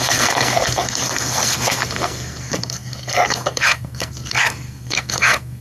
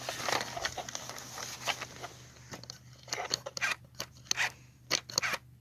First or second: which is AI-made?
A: first